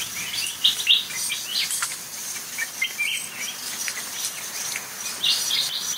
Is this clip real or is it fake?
real